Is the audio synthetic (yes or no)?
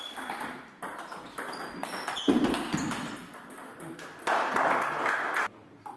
yes